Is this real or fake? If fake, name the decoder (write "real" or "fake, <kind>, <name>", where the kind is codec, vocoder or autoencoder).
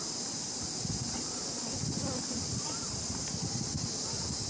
real